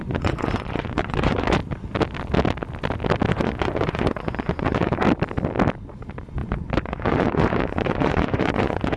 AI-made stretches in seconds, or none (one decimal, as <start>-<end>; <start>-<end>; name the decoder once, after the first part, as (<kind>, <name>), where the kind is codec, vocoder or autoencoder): 0.0-1.6 (vocoder, Vocos); 3.3-5.0; 5.9-9.0

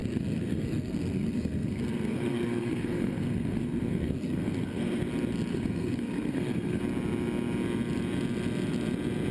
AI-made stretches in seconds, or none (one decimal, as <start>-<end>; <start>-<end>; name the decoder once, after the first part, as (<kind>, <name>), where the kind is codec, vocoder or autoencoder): 0.0-5.0 (codec, SNAC); 5.5-6.8

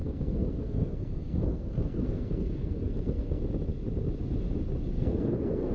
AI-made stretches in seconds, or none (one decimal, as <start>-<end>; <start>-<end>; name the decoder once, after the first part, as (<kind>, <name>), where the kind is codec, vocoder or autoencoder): 0.0-3.4 (codec, SNAC); 4.9-5.7

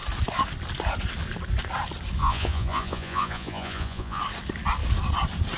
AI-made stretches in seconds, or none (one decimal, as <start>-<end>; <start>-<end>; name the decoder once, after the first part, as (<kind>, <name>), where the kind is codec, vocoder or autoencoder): 2.2-4.2 (vocoder, Vocos)